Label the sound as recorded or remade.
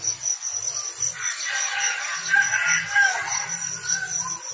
recorded